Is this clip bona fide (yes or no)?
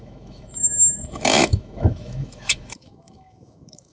no